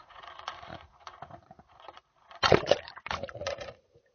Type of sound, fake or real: fake